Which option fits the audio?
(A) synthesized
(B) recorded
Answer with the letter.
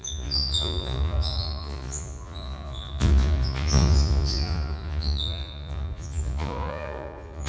A